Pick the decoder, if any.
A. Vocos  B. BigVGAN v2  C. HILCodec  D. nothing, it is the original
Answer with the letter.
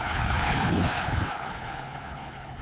C